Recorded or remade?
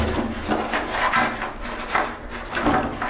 recorded